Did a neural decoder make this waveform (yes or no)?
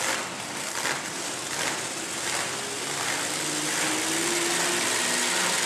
no